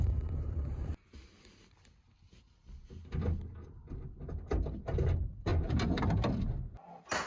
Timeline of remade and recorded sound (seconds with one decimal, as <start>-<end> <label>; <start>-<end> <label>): 0.0-0.9 remade; 0.9-4.7 recorded; 4.7-5.5 remade; 5.5-7.3 recorded